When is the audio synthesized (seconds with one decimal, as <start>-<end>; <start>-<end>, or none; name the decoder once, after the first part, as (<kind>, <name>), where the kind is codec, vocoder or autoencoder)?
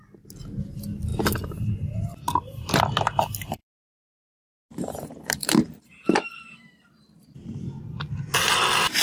3.6-7.6 (vocoder, BigVGAN v2)